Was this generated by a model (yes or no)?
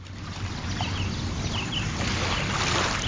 no